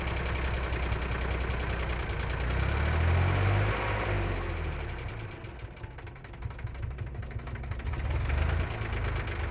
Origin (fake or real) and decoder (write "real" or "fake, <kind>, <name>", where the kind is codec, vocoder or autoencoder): real